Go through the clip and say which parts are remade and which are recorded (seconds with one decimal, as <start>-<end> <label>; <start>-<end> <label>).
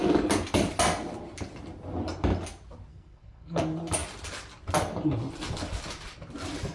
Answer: 0.0-2.9 recorded; 2.9-3.6 remade; 3.6-6.7 recorded